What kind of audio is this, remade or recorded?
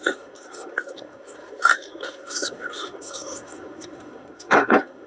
remade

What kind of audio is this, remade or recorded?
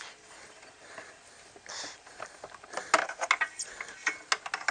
recorded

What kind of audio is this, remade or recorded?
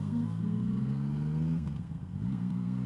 remade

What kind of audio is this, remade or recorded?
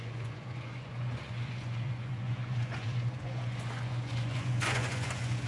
remade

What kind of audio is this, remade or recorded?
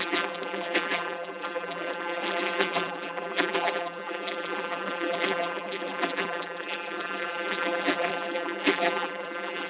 remade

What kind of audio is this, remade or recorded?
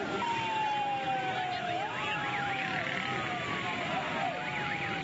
recorded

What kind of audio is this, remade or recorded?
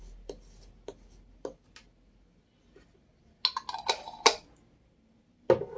recorded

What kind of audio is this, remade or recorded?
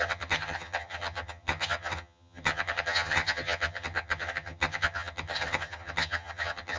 remade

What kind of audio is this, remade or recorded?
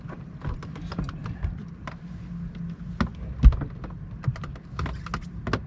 recorded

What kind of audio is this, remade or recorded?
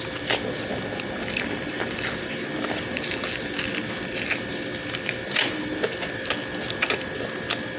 remade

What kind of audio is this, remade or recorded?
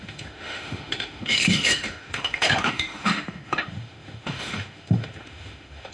remade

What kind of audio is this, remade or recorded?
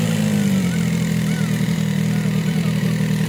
recorded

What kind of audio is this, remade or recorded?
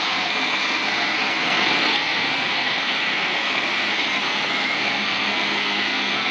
remade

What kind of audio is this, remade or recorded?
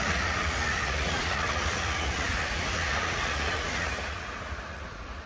remade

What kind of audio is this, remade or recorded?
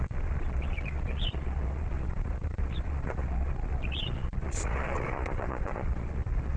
remade